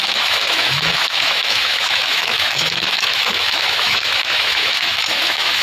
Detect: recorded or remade remade